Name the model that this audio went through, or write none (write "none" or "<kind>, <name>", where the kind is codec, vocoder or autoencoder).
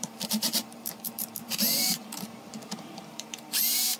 vocoder, BigVGAN v2